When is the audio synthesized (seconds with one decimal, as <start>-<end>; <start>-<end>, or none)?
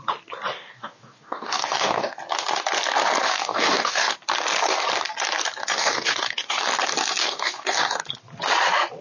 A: 0.5-2.2; 3.2-4.1; 5.6-6.6; 7.2-8.0